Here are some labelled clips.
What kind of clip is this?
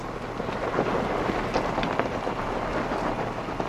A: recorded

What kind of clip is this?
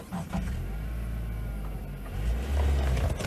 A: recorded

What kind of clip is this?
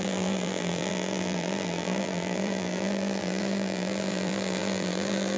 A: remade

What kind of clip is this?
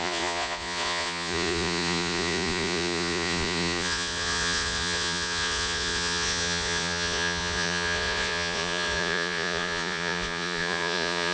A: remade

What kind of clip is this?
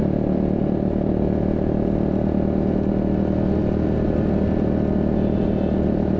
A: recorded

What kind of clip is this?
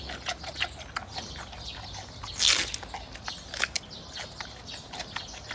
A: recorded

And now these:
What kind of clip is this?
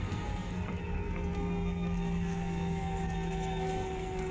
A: remade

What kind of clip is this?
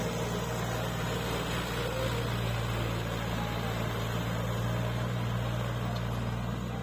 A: recorded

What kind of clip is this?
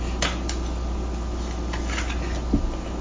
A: recorded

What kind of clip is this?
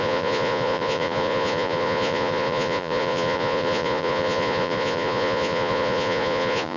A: remade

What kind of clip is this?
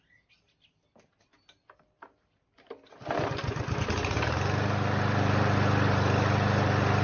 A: recorded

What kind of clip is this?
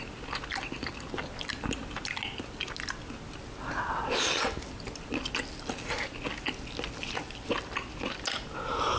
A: recorded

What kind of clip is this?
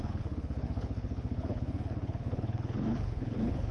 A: remade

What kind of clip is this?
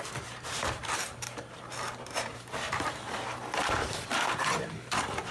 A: remade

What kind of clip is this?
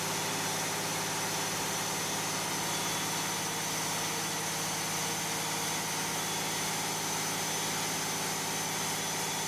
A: recorded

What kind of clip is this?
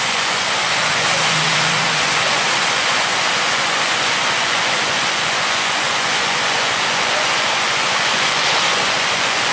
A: remade